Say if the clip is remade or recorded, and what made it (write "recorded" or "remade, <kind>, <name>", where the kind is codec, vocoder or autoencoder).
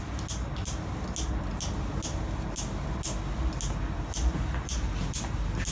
recorded